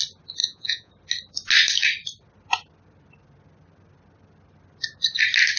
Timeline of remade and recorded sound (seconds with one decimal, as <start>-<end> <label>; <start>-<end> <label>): 0.0-0.4 recorded; 0.4-0.9 remade; 0.9-5.6 recorded